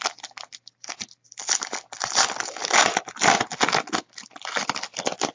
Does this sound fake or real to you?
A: real